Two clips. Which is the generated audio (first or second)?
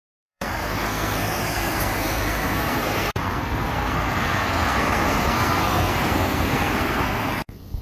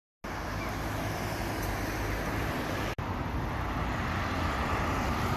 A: first